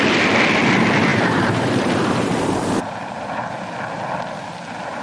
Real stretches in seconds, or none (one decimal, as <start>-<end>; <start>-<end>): 0.0-1.1; 2.4-5.0